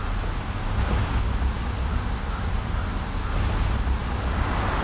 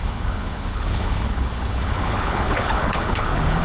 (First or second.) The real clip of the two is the first